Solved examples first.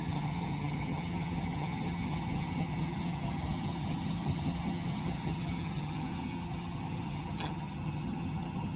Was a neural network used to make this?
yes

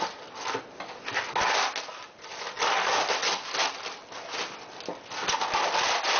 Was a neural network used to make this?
no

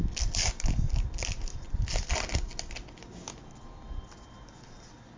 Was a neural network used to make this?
no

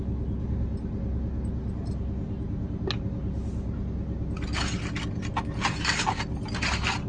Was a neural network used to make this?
no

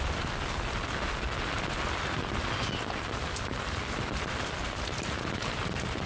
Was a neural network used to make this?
no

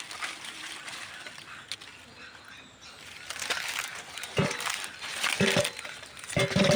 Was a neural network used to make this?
no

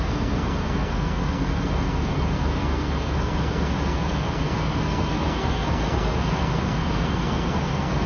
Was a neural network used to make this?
yes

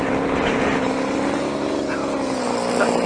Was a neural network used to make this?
no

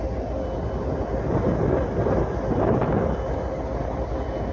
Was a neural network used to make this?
no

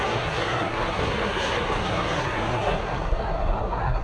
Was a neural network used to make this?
yes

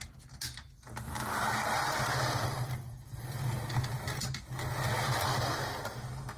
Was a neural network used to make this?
no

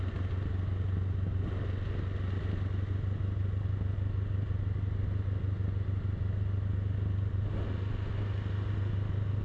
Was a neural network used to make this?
no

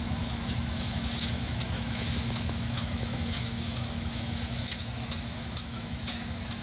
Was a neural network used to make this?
yes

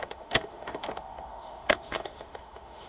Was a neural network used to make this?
yes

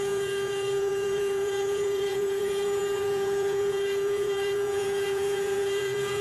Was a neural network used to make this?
yes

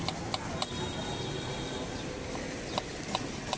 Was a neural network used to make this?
no